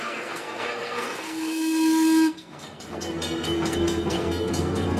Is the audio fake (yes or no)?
yes